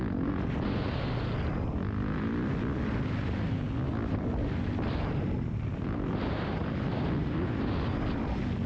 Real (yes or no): yes